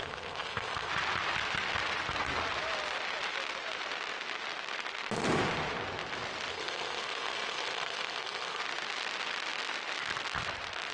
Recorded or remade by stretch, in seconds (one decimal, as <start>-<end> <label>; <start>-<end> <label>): 0.0-0.9 remade; 0.9-6.5 recorded; 6.5-8.6 remade; 8.6-10.9 recorded